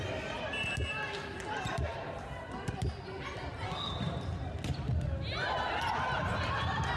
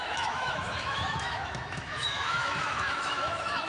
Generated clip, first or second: second